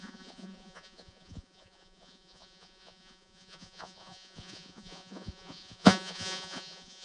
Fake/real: fake